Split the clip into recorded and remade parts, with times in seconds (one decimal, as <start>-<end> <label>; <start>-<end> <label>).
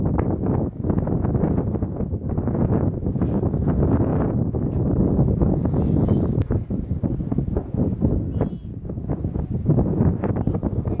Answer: 0.0-8.7 recorded; 8.7-10.4 remade; 10.4-11.0 recorded